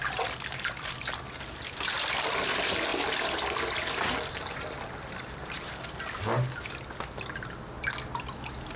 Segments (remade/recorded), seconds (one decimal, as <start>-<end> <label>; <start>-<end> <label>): 0.0-8.8 recorded